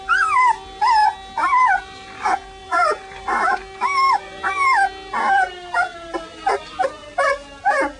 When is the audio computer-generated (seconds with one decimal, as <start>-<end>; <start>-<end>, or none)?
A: 2.6-3.6; 5.9-7.2